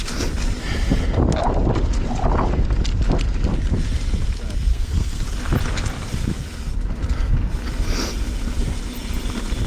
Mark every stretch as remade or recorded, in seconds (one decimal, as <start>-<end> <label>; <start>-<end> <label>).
0.0-4.7 recorded; 4.7-5.2 remade; 5.2-9.7 recorded